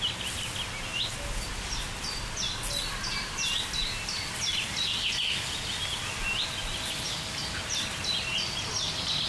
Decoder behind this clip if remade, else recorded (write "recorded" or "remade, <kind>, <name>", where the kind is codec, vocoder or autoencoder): recorded